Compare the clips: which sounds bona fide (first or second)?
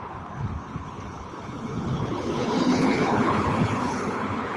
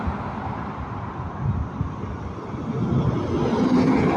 second